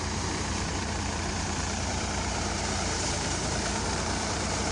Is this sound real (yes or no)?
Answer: no